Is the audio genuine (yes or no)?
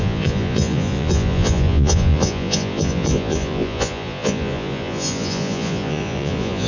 no